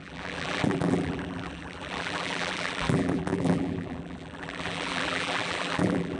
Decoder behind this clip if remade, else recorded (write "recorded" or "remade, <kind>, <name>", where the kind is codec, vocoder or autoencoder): remade, vocoder, BigVGAN v2